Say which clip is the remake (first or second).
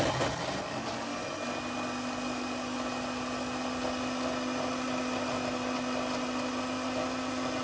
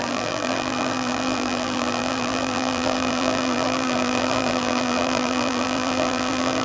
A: second